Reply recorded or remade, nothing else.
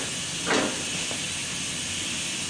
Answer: recorded